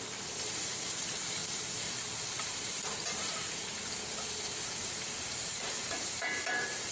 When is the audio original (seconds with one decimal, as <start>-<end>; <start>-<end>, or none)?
1.4-2.5; 3.8-4.8